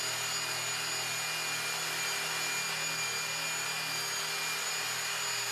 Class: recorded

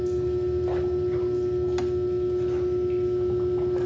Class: recorded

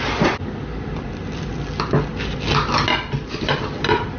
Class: recorded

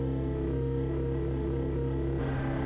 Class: remade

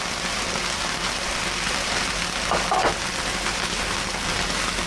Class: recorded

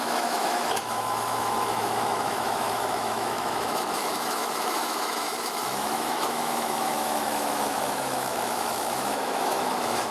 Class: remade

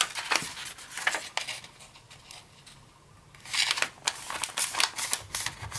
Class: recorded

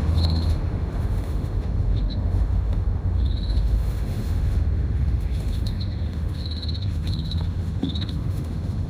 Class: remade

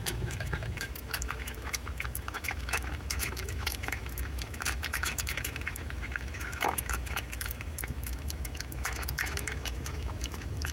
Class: remade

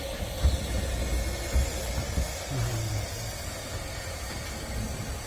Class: recorded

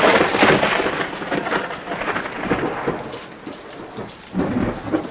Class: recorded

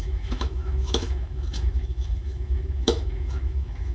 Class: remade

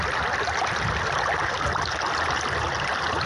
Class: recorded